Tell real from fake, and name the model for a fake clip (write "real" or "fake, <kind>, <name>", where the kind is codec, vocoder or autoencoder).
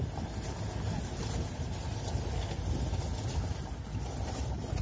real